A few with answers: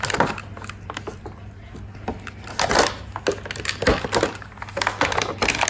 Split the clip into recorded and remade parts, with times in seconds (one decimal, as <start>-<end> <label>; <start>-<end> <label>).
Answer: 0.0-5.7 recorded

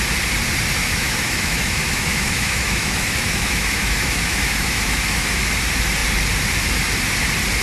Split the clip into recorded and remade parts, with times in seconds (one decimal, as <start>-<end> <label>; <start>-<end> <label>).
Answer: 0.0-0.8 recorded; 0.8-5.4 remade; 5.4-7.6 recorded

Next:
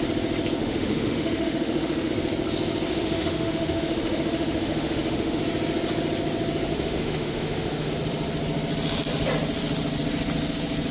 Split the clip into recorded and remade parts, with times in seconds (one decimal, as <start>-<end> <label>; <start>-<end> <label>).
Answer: 0.0-0.6 recorded; 0.6-2.1 remade; 2.1-2.9 recorded; 2.9-5.4 remade; 5.4-6.7 recorded; 6.7-7.9 remade; 7.9-10.9 recorded